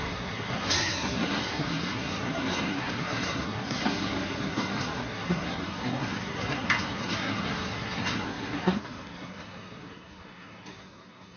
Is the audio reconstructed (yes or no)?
yes